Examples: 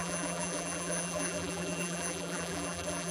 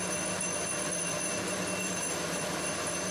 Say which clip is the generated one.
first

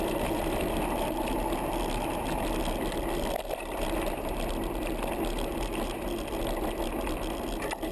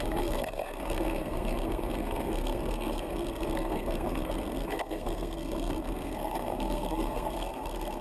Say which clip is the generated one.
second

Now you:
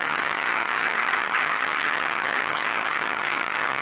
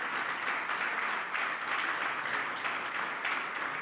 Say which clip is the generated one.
first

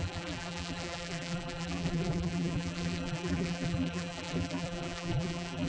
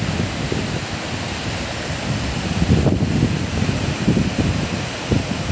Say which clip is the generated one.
first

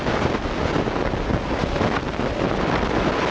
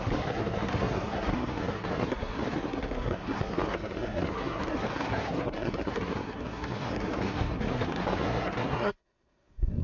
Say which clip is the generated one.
second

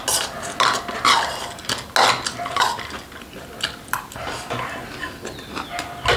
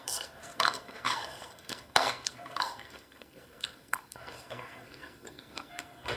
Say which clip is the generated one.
second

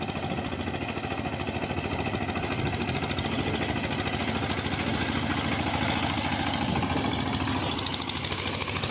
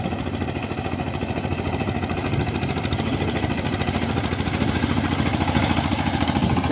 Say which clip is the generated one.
second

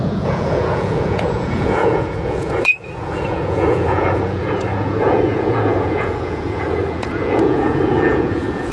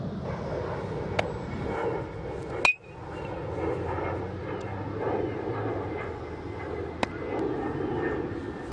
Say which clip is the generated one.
first